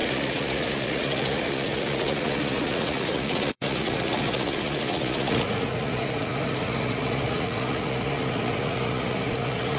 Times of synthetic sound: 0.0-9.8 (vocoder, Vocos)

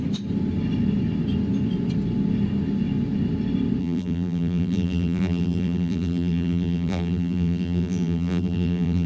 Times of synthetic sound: 3.8-9.1 (vocoder, BigVGAN v2)